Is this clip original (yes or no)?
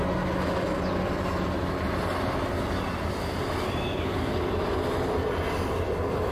yes